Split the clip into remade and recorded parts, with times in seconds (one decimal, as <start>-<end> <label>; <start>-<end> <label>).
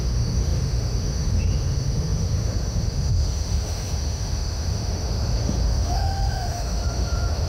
0.0-7.5 remade